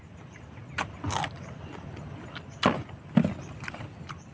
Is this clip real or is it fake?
real